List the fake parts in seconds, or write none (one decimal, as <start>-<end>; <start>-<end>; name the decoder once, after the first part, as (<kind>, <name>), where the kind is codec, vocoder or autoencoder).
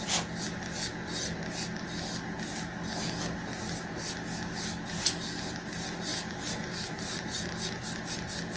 none